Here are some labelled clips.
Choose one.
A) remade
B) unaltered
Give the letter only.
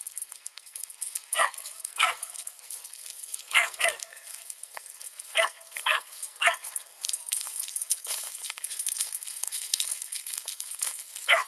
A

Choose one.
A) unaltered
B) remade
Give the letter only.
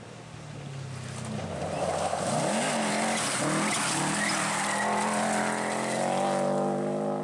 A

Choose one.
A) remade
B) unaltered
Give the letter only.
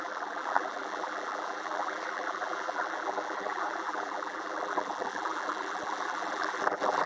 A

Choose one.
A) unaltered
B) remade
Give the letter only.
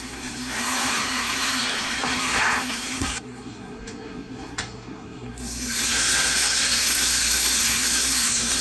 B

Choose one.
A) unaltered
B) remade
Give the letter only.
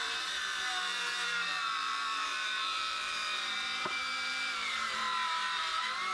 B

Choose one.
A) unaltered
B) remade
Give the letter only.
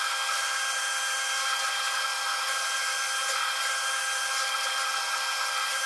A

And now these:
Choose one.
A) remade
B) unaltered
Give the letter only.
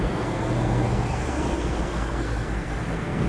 A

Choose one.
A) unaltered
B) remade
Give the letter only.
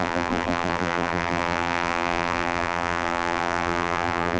B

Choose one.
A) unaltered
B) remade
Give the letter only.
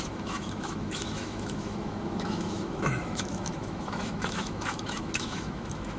B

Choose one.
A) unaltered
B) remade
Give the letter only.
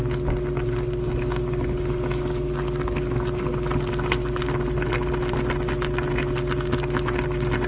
A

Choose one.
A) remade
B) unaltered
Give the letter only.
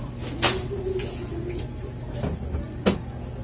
B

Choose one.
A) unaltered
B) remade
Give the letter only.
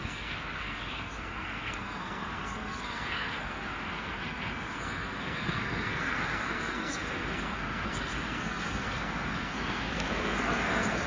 B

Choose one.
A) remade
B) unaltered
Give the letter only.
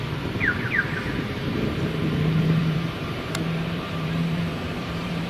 A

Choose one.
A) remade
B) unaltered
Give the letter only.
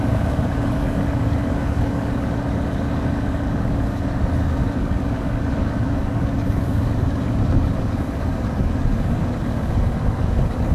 A